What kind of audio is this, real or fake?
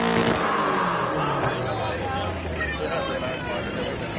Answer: real